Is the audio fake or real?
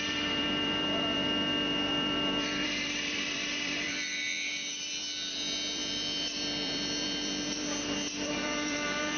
fake